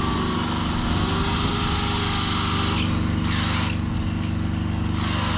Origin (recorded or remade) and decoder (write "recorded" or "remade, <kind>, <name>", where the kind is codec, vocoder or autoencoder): recorded